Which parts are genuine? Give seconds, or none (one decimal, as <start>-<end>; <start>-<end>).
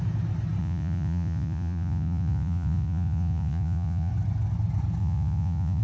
0.0-0.6; 4.1-5.0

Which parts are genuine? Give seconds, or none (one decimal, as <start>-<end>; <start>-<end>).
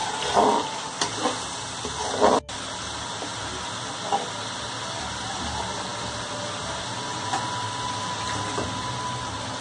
0.0-9.6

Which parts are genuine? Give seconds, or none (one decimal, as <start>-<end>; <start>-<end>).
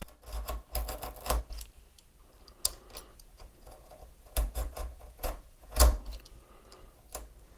0.0-3.1; 6.0-7.6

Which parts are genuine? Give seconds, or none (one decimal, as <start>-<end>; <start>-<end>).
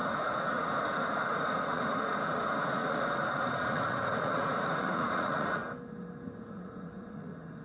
5.6-6.4